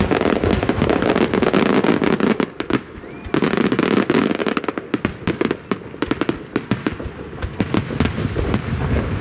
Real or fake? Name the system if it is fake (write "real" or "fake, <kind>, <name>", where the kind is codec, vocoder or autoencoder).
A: real